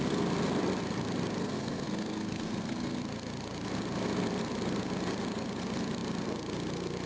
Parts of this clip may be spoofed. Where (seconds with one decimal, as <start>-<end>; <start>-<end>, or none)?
1.4-3.0